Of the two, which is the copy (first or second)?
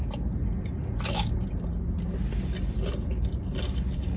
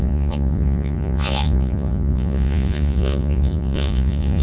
second